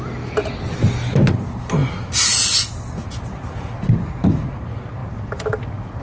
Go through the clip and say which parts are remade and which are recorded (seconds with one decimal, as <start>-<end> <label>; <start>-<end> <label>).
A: 0.0-6.0 recorded